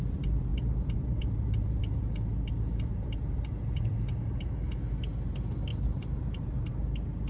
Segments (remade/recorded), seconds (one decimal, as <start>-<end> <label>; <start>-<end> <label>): 0.0-0.5 recorded; 0.5-1.8 remade; 1.8-2.9 recorded; 2.9-4.6 remade; 4.6-5.7 recorded; 5.7-6.7 remade; 6.7-7.3 recorded

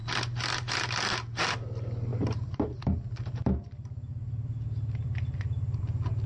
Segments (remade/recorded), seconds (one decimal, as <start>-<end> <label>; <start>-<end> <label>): 0.0-2.1 recorded; 2.1-2.8 remade; 2.8-4.1 recorded; 4.1-5.8 remade; 5.8-6.3 recorded

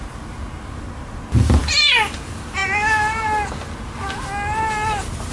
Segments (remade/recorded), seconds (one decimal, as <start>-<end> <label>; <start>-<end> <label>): 0.0-5.3 recorded

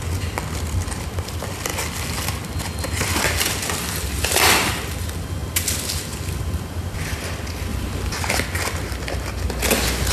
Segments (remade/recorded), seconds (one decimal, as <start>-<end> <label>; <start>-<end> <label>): 0.0-7.7 recorded; 7.7-8.3 remade; 8.3-10.1 recorded

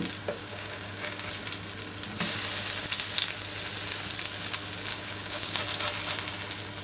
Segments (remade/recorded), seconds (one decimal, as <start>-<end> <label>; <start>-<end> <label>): 0.0-0.4 recorded; 0.4-1.3 remade; 1.3-4.9 recorded; 4.9-5.6 remade; 5.6-6.8 recorded